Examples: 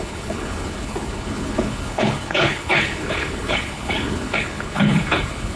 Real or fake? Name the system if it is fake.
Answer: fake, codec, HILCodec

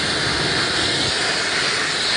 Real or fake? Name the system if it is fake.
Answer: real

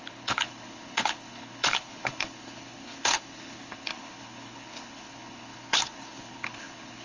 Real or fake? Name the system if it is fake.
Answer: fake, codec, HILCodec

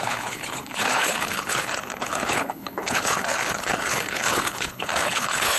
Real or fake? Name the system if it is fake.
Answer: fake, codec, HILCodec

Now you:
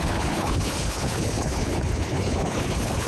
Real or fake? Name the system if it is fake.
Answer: fake, codec, HILCodec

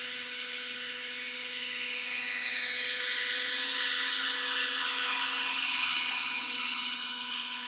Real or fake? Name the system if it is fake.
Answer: fake, codec, HILCodec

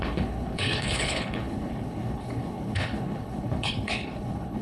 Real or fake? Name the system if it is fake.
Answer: fake, codec, HILCodec